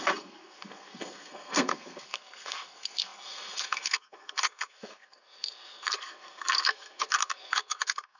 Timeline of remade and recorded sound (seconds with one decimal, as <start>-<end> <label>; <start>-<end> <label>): 0.0-8.2 remade